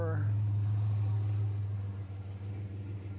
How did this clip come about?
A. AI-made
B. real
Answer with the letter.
B